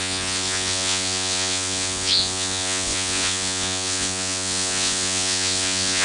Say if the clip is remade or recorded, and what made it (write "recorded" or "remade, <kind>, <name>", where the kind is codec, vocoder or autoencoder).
remade, vocoder, Vocos